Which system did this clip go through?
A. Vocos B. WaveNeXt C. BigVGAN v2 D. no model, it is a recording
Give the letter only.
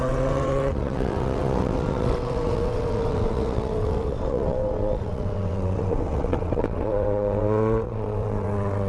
B